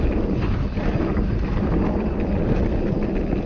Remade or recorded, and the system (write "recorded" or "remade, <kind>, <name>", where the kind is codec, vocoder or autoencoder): recorded